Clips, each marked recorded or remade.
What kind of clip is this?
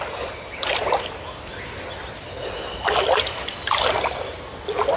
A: recorded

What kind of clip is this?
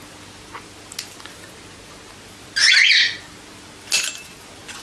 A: recorded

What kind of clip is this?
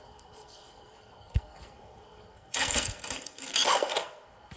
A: remade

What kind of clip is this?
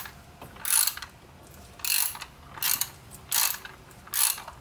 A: recorded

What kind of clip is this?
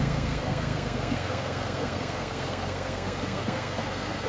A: remade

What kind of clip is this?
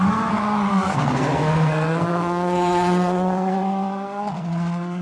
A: remade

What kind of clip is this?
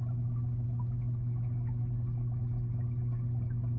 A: recorded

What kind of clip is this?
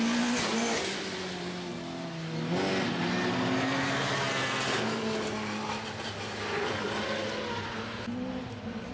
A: recorded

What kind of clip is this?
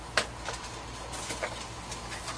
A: recorded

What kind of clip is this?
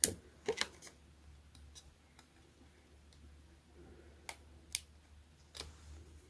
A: recorded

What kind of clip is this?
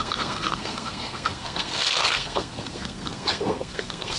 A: remade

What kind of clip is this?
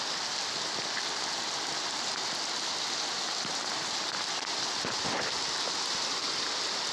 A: recorded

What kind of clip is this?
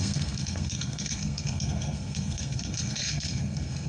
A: remade